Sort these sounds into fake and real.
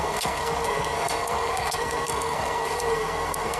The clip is fake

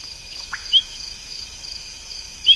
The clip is fake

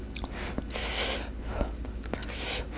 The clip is real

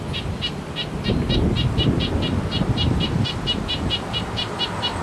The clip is real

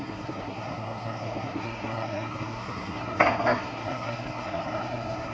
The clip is fake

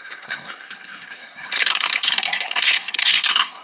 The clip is fake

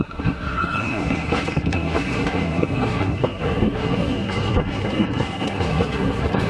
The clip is fake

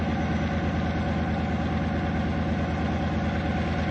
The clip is real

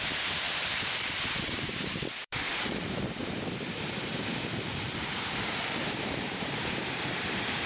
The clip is fake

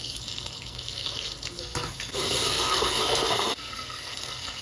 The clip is fake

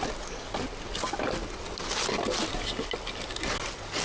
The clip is real